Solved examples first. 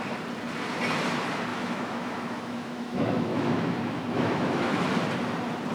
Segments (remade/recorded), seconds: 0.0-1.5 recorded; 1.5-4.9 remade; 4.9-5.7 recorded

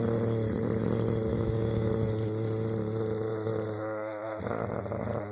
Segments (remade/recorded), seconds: 0.0-1.3 recorded; 1.3-1.9 remade; 1.9-5.3 recorded

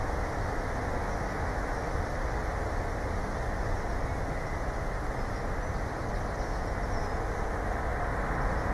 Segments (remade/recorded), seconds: 0.0-0.4 recorded; 0.4-1.9 remade; 1.9-8.7 recorded

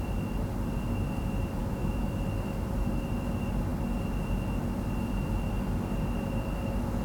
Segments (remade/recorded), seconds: 0.0-1.6 recorded; 1.6-2.1 remade; 2.1-7.0 recorded

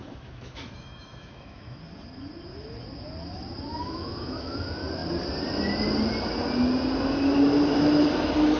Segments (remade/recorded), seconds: 0.0-1.8 remade; 1.8-3.7 recorded; 3.7-4.6 remade; 4.6-8.6 recorded